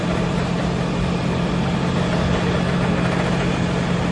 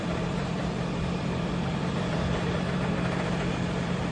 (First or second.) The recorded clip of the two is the first